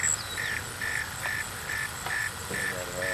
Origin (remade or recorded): recorded